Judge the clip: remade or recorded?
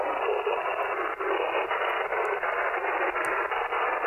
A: recorded